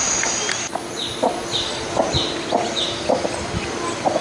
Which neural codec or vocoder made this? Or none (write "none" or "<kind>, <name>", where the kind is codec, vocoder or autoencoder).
none